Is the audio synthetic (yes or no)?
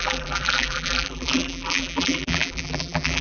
yes